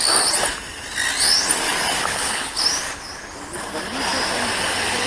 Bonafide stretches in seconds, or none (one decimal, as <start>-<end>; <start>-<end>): 0.0-2.1; 2.6-5.1